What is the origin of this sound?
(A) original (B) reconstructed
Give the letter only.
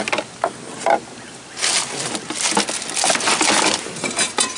A